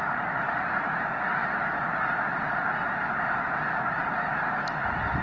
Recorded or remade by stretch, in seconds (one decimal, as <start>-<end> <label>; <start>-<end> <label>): 0.0-5.2 recorded